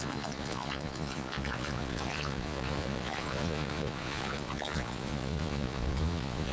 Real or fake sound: fake